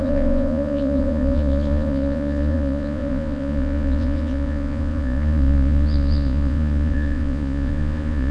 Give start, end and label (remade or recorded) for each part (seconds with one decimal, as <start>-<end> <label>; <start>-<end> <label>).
0.0-8.3 remade